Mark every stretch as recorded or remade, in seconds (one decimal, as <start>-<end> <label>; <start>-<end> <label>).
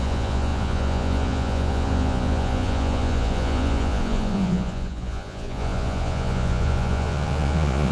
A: 0.0-7.9 remade